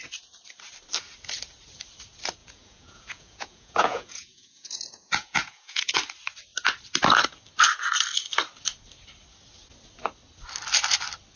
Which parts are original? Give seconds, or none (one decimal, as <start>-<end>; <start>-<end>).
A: 0.0-2.4; 5.9-11.4